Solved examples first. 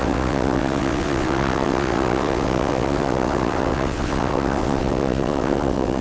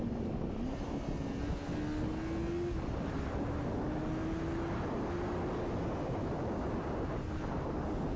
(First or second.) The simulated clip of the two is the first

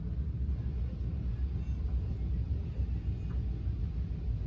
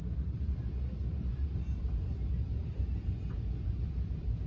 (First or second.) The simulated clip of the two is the second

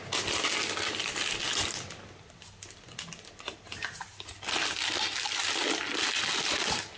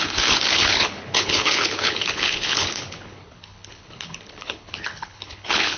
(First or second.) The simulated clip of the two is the second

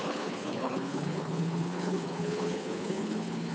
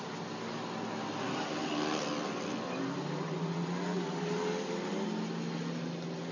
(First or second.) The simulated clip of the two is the first